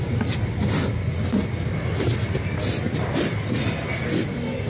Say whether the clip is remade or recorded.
recorded